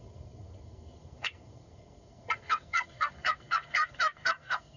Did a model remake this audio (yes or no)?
yes